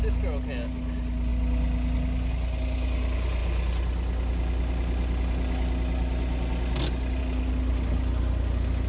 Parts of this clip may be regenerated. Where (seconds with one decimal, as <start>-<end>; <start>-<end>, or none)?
none

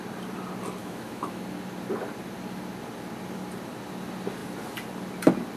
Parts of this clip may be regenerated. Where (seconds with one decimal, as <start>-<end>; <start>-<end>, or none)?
0.8-1.4

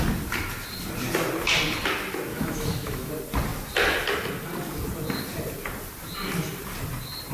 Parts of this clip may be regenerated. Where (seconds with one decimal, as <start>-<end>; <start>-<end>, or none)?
2.3-3.1

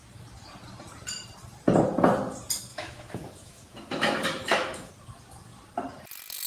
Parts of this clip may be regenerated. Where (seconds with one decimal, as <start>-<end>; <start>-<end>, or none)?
2.7-4.9

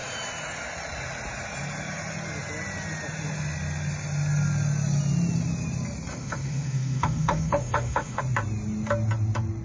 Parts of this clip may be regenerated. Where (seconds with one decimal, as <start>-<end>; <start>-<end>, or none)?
6.1-8.2

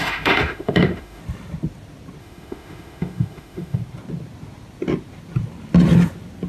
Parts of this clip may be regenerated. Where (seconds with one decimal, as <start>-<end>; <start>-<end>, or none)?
0.0-1.2; 2.2-3.8

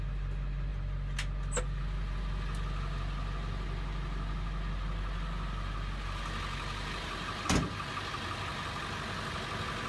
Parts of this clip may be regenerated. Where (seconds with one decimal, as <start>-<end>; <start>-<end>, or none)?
none

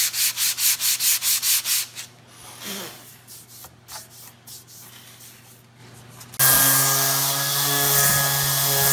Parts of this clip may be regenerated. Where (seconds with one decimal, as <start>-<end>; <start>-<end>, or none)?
none